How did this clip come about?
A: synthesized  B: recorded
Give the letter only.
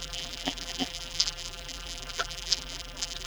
A